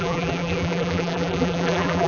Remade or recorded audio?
remade